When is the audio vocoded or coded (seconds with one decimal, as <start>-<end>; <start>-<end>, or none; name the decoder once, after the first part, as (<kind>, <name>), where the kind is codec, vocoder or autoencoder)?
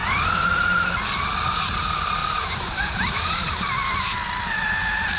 2.2-3.5 (vocoder, BigVGAN v2)